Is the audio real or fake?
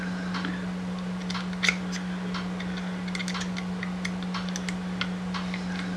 real